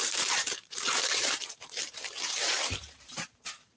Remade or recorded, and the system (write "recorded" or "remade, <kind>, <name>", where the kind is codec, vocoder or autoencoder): remade, vocoder, BigVGAN v2